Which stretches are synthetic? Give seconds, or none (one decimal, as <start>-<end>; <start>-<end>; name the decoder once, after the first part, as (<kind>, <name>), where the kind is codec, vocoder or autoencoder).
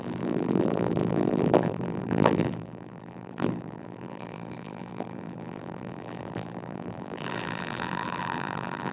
0.0-8.9 (vocoder, BigVGAN v2)